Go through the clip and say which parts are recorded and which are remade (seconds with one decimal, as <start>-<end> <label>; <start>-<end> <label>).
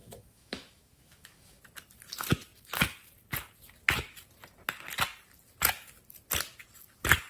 0.0-1.6 remade; 1.6-7.3 recorded